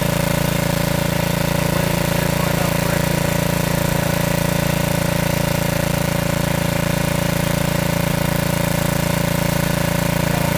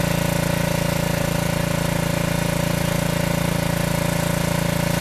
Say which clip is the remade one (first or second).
first